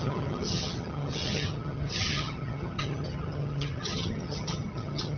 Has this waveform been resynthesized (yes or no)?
yes